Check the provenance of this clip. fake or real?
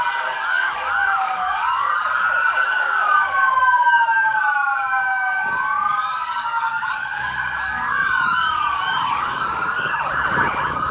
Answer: fake